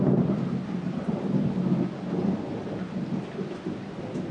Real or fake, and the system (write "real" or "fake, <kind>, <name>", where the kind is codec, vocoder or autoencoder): real